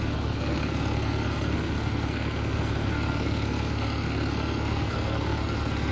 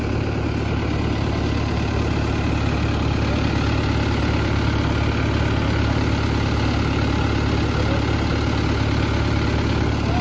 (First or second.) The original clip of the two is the second